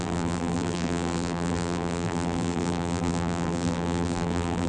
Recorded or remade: remade